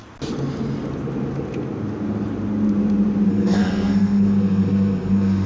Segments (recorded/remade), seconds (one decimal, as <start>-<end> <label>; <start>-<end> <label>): 0.0-3.3 recorded; 3.3-5.5 remade